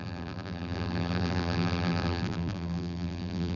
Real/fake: fake